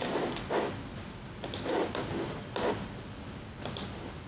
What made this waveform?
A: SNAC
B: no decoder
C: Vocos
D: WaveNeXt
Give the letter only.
B